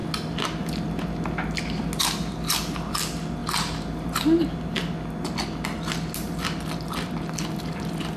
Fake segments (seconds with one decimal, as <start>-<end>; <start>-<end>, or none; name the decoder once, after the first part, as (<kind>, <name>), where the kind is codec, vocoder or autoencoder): 3.4-4.1 (vocoder, BigVGAN v2)